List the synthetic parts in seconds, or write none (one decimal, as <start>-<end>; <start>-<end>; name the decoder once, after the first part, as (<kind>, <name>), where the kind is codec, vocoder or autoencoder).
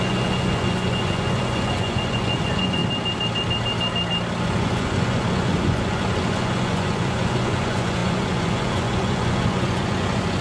0.0-2.8 (vocoder, Vocos); 4.4-10.4